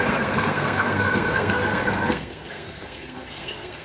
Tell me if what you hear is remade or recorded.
remade